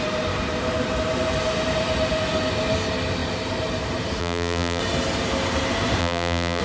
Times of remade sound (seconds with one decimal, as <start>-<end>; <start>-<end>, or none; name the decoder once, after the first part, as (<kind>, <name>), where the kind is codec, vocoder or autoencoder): 4.2-4.8 (vocoder, BigVGAN v2); 6.0-6.6